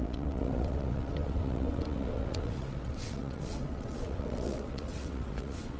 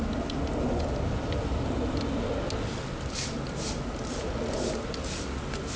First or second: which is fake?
first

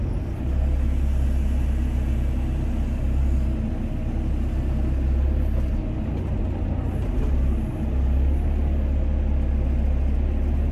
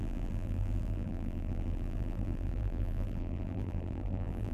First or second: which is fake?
second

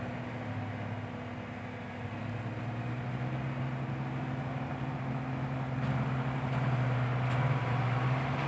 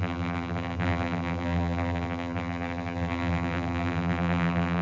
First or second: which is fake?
second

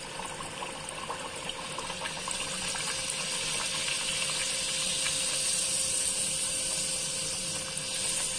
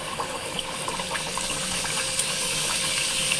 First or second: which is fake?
second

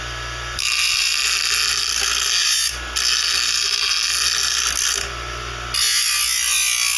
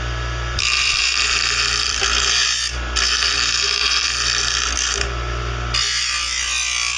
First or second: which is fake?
second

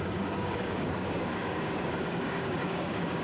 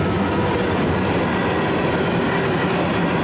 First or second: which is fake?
first